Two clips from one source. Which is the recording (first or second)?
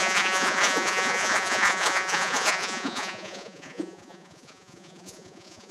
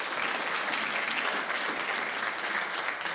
second